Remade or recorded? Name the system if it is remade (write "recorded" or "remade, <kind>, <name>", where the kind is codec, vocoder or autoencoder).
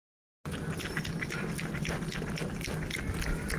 recorded